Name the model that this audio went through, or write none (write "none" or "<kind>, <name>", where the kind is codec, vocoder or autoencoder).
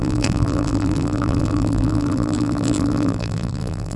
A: vocoder, BigVGAN v2